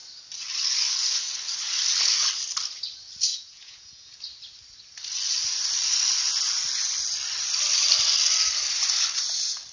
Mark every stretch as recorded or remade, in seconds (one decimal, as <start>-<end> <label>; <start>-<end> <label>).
0.0-3.3 recorded; 3.3-4.2 remade; 4.2-9.7 recorded